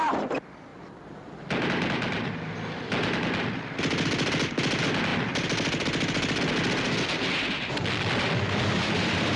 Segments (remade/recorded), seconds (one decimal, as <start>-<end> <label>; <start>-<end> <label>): 0.0-9.4 recorded